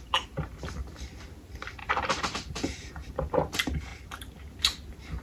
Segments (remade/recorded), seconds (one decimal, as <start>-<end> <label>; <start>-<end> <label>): 0.0-1.8 recorded; 1.8-3.1 remade; 3.1-5.2 recorded